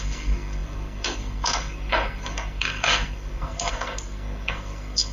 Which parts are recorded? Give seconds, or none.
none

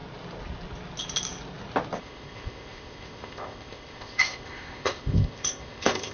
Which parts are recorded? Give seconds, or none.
0.0-2.0

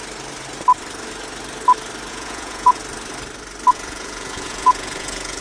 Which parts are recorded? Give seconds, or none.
0.0-2.1; 2.8-3.7

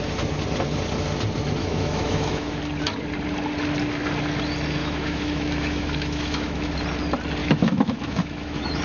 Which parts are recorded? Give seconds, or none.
0.0-1.6; 2.6-4.8; 6.8-7.4

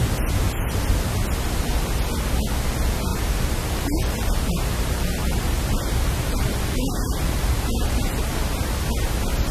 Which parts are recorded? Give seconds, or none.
0.0-3.1; 8.2-9.5

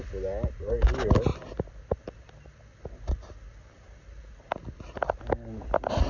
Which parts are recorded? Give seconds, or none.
0.0-6.1

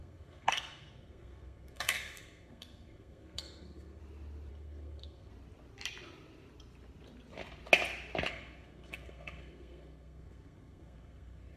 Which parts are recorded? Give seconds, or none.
4.0-4.5; 5.3-8.3